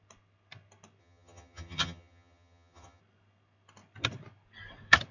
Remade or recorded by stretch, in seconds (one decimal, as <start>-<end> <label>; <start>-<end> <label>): 0.0-1.0 recorded; 1.0-3.0 remade; 3.0-5.1 recorded